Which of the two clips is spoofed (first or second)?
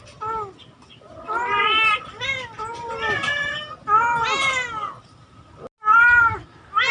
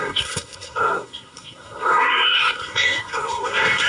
second